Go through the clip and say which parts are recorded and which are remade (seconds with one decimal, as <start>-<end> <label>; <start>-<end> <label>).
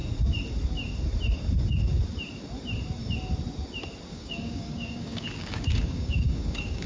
0.0-4.1 recorded; 4.1-6.9 remade